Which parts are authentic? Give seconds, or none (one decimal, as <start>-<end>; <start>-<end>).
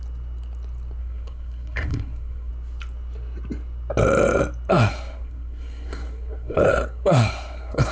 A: 0.0-1.0; 2.5-4.7